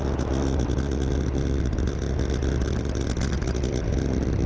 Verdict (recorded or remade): recorded